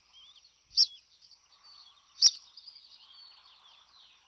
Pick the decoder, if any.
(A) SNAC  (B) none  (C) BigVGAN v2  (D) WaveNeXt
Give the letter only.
B